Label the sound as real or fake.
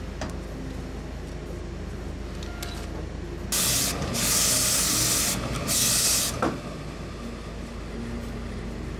real